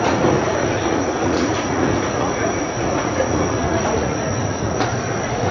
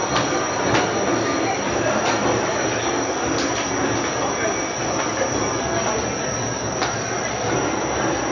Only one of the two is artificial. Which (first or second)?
first